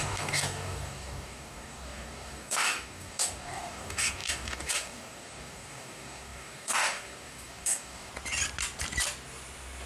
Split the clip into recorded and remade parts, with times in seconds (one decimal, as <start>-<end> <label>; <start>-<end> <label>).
0.0-8.1 remade; 8.1-9.9 recorded